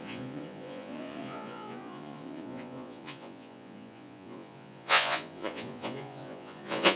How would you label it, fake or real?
fake